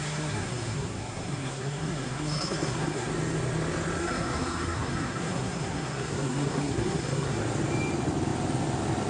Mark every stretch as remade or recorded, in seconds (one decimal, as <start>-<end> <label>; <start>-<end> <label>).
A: 0.0-3.1 remade; 3.1-4.0 recorded; 4.0-7.4 remade; 7.4-9.1 recorded